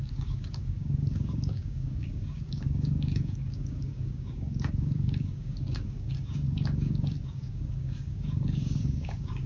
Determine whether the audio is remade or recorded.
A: remade